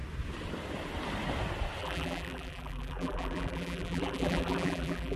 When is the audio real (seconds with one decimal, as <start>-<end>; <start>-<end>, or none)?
0.0-1.8